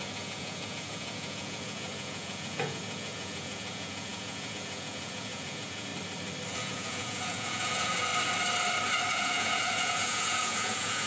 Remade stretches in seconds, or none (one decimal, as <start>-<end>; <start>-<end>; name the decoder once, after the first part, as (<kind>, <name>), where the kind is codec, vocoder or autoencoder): 0.0-5.9 (vocoder, Vocos); 6.5-8.1; 9.1-11.1